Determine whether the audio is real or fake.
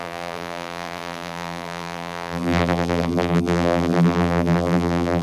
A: fake